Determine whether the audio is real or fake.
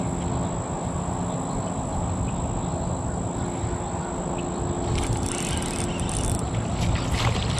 real